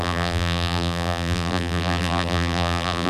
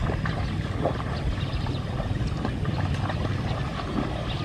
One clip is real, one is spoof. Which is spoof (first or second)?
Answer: first